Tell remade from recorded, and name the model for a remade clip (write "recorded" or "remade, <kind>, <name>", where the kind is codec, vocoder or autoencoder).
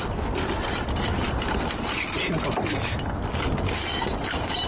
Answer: recorded